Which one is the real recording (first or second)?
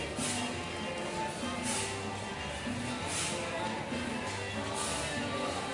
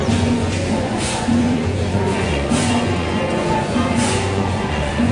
first